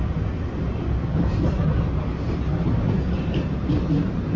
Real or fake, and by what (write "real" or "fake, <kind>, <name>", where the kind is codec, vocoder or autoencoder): real